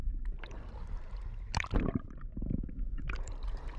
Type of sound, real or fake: fake